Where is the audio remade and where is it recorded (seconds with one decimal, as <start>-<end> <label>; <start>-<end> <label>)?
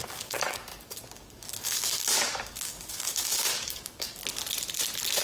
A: 0.0-4.2 remade; 4.2-5.2 recorded